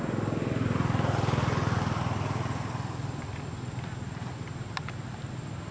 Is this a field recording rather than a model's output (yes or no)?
yes